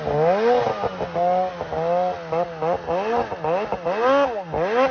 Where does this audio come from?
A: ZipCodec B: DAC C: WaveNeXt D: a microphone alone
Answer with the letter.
D